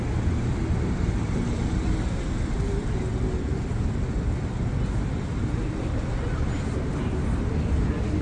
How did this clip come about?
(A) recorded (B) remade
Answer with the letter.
A